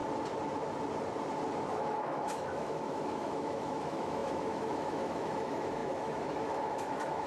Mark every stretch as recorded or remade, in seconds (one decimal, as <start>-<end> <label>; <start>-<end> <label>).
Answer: 0.0-1.7 recorded; 1.7-7.3 remade